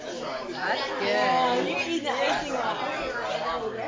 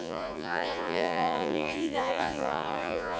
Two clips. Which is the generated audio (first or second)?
second